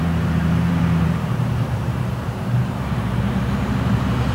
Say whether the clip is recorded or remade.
remade